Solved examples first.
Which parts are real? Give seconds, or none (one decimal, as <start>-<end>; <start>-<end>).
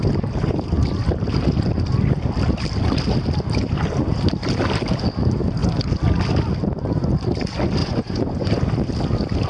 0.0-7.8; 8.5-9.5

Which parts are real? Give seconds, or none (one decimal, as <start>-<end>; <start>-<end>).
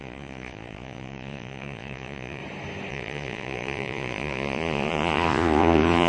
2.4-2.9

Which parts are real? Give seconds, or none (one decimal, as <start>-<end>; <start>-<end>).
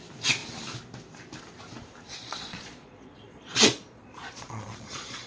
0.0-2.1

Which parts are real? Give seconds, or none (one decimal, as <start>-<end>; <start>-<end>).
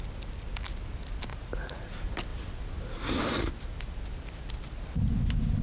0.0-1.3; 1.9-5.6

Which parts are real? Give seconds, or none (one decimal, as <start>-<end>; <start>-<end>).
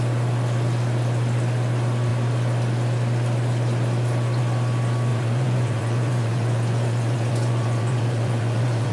0.0-5.1